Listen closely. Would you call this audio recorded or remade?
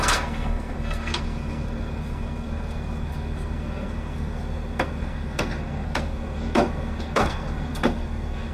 remade